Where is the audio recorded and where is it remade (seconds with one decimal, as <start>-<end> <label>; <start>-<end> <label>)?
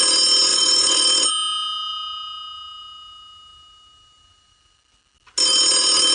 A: 0.0-0.5 recorded; 0.5-1.3 remade; 1.3-6.1 recorded